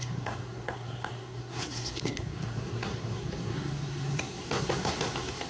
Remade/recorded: remade